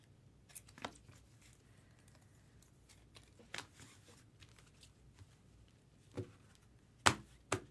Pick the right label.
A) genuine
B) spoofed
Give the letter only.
A